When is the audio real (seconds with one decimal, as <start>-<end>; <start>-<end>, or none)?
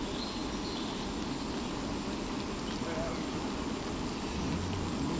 0.0-5.2